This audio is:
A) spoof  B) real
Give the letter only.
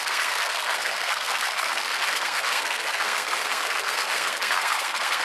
A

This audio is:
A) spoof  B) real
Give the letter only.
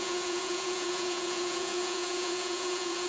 A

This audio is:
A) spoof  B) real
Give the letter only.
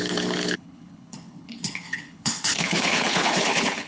A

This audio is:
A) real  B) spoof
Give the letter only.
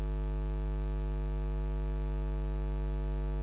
A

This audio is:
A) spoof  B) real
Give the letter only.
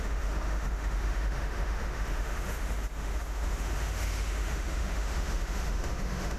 A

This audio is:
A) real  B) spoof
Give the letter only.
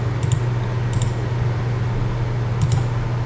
A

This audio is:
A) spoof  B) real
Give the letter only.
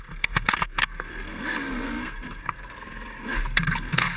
A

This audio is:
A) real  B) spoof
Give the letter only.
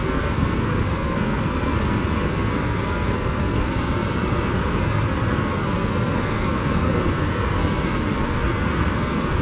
B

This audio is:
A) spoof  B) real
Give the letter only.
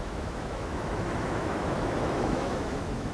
A